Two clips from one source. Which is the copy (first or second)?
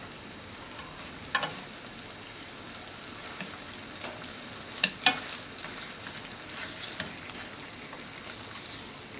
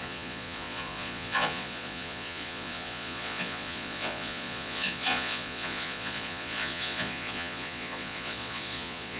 second